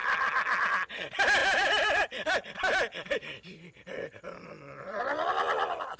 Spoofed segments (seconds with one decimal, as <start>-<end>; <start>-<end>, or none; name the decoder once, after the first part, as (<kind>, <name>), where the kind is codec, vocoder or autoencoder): 1.4-5.0 (vocoder, BigVGAN v2)